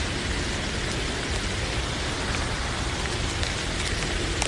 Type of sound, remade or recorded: recorded